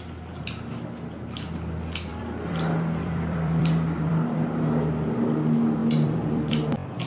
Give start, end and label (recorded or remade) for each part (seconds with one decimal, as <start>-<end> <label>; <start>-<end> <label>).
0.0-2.1 recorded; 2.1-4.1 remade; 4.1-5.8 recorded; 5.8-7.1 remade